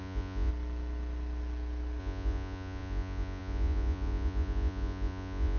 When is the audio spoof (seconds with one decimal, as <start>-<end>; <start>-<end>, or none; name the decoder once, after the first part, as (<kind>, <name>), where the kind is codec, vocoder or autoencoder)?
0.0-0.5 (vocoder, Vocos); 2.0-5.6